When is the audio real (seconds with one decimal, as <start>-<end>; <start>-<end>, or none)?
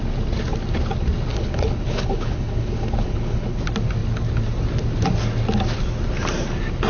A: 0.0-1.3; 3.6-6.9